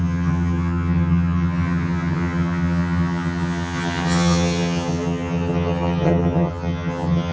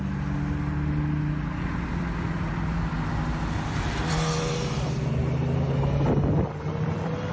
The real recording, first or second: second